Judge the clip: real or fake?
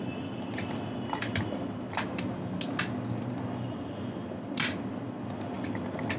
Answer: real